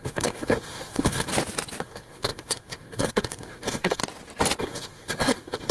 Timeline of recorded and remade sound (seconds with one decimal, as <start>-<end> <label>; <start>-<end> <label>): 0.0-1.3 remade; 1.3-1.8 recorded; 1.8-4.0 remade; 4.0-4.6 recorded; 4.6-5.7 remade